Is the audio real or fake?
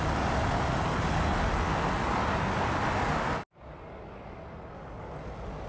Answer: real